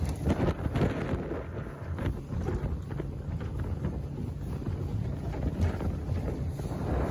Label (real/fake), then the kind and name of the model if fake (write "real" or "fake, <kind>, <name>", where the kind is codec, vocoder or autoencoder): real